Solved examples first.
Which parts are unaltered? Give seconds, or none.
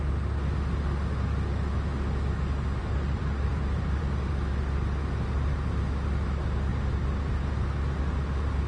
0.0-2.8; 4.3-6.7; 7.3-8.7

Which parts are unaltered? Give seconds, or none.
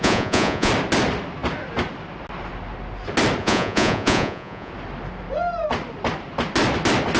0.7-3.4; 4.7-7.2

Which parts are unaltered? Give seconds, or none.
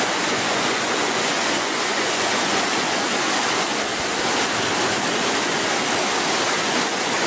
3.9-5.2; 5.8-6.6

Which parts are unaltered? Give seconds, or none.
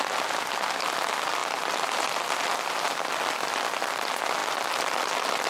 0.0-1.4; 3.3-5.5